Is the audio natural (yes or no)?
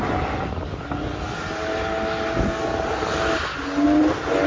yes